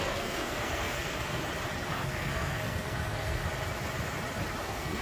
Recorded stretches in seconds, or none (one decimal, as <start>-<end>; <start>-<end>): 1.4-1.9; 3.4-4.6